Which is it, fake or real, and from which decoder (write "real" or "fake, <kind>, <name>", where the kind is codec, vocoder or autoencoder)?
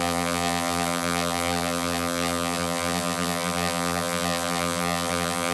fake, vocoder, BigVGAN v2